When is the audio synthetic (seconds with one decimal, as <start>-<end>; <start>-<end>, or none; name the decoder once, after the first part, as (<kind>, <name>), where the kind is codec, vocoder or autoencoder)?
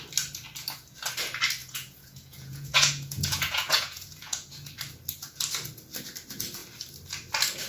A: 1.6-4.7 (vocoder, Vocos)